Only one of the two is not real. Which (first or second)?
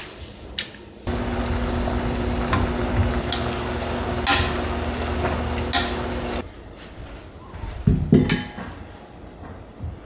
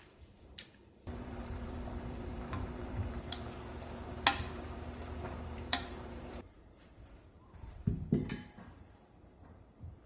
second